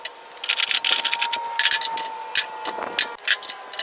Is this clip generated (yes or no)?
no